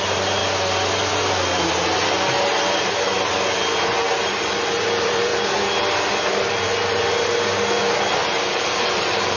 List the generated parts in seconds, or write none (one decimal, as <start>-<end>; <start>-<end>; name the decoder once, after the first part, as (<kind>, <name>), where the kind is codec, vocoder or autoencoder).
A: 0.0-0.4 (vocoder, BigVGAN v2); 2.4-3.1; 4.1-5.3; 6.5-7.0; 8.5-9.4

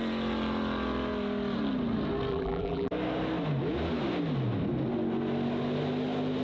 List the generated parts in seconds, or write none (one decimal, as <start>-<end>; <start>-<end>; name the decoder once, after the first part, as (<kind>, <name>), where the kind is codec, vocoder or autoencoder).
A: 2.3-2.9 (vocoder, BigVGAN v2)

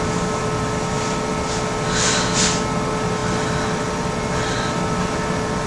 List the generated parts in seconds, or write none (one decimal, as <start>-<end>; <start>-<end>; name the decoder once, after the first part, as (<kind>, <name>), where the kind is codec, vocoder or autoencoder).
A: none

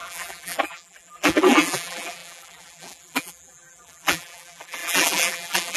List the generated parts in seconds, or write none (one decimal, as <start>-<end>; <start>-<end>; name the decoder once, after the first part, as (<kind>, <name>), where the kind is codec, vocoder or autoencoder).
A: 0.0-5.8 (vocoder, BigVGAN v2)

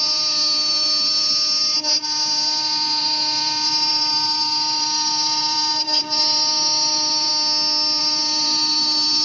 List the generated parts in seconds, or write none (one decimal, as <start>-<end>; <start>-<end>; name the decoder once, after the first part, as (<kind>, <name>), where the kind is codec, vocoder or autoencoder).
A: 0.0-7.3 (vocoder, BigVGAN v2); 8.0-9.2

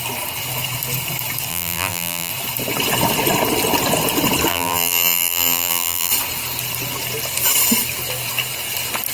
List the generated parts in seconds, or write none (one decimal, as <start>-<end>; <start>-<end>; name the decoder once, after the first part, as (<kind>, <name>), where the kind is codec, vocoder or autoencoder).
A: 1.5-2.3 (vocoder, BigVGAN v2); 4.5-6.1

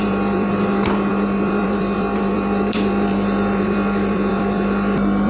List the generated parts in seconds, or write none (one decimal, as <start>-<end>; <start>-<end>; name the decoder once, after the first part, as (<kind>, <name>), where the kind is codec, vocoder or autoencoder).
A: 0.0-5.3 (vocoder, BigVGAN v2)

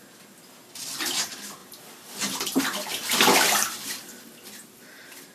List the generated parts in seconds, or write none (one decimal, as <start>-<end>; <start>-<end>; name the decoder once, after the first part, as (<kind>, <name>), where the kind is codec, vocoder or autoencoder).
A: 3.0-5.3 (vocoder, BigVGAN v2)